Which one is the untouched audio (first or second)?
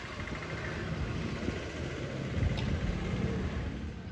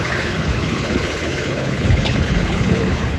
first